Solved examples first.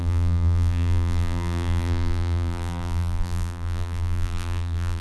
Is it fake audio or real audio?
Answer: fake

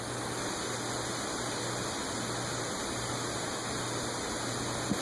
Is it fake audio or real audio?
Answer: real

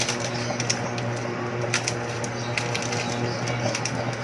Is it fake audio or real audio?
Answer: real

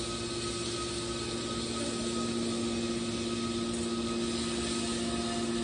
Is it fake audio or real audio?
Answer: real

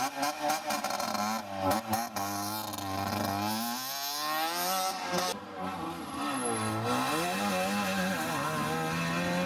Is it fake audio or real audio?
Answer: real